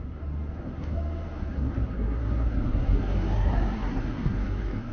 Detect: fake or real fake